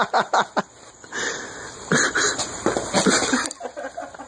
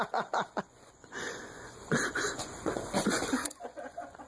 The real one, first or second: first